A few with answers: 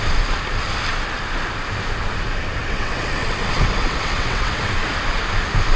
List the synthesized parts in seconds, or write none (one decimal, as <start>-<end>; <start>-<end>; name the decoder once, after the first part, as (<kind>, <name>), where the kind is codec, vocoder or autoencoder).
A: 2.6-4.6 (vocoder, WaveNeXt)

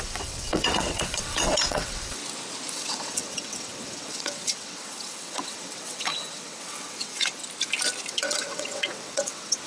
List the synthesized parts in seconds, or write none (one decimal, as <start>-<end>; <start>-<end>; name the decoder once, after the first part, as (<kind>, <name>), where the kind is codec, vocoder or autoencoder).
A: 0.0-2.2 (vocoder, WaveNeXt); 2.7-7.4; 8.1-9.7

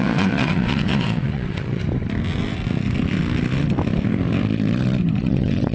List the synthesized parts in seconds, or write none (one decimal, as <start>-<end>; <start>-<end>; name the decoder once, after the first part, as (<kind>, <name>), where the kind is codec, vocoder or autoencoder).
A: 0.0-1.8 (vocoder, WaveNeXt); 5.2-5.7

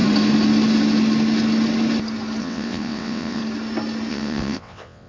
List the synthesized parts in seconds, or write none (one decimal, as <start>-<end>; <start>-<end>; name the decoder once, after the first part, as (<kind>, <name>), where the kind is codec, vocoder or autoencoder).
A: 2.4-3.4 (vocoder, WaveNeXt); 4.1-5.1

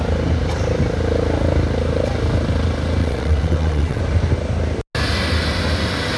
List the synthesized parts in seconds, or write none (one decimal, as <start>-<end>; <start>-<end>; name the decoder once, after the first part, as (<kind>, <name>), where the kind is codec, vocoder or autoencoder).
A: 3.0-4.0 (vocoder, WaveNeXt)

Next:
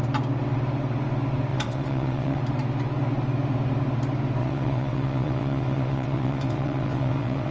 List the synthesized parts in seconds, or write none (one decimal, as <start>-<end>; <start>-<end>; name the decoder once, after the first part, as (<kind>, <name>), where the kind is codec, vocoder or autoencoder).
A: 1.5-2.4 (vocoder, WaveNeXt); 4.4-7.5

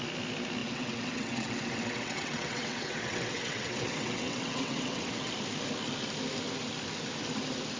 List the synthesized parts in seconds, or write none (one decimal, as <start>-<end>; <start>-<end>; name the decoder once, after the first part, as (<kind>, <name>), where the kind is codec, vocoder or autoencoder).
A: 0.6-5.3 (vocoder, WaveNeXt)